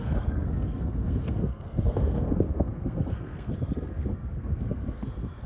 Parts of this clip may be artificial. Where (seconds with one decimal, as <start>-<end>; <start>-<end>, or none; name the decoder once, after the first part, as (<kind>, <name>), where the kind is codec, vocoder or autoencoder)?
0.0-5.5 (codec, SNAC)